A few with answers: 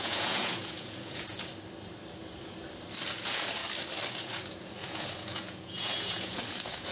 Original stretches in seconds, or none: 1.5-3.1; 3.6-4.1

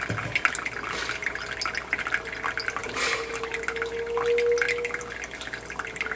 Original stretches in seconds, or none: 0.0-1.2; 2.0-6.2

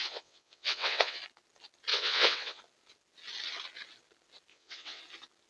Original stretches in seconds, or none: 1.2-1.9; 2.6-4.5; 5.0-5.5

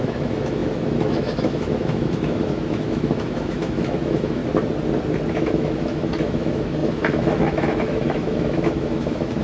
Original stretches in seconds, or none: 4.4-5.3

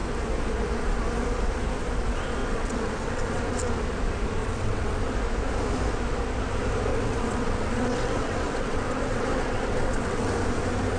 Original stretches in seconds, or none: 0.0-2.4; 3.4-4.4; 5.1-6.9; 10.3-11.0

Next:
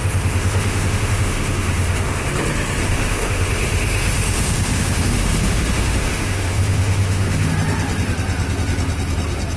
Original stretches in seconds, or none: 2.3-2.8; 7.5-9.6